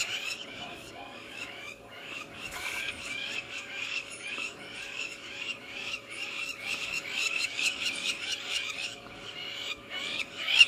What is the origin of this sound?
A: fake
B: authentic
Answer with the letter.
A